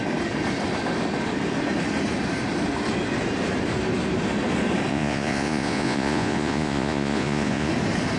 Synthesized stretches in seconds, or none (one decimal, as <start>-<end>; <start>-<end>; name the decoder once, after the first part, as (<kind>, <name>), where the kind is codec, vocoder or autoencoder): 4.9-7.7 (vocoder, Vocos)